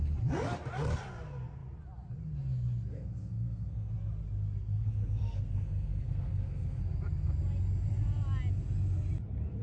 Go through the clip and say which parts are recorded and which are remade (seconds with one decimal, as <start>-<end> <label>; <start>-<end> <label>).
0.0-2.9 recorded; 2.9-3.9 remade; 3.9-4.7 recorded; 4.7-6.8 remade; 6.8-9.6 recorded